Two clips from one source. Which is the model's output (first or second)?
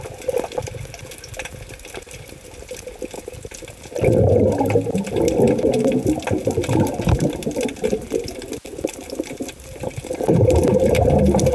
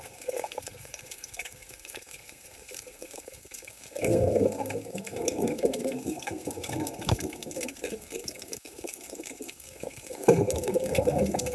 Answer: second